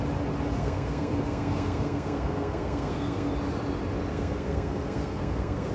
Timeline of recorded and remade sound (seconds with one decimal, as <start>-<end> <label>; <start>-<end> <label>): 0.0-0.6 recorded; 0.6-3.3 remade; 3.3-4.1 recorded; 4.1-5.7 remade

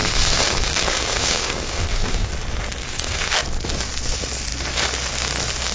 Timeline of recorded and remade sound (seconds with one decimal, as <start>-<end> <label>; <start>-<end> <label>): 0.0-2.3 remade; 2.3-2.8 recorded; 2.8-3.4 remade; 3.4-5.7 recorded

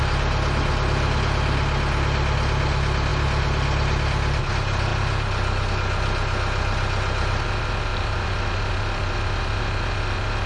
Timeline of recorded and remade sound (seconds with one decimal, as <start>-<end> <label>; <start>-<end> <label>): 0.0-10.5 recorded